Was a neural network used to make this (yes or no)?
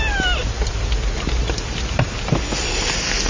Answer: no